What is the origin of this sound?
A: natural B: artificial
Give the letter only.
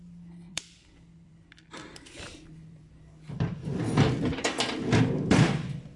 B